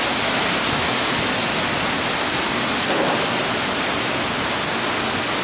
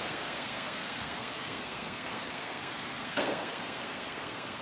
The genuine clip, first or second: first